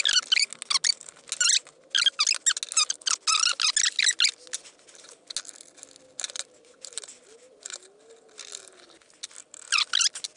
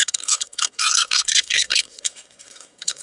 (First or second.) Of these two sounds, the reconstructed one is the second